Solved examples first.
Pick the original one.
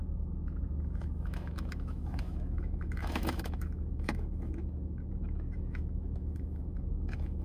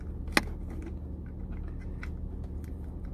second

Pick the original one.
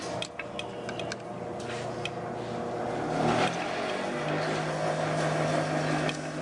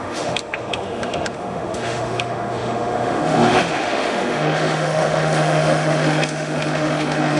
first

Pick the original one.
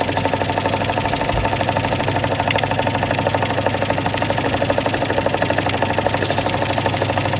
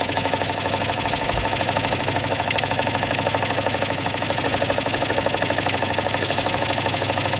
first